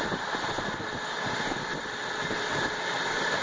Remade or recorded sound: recorded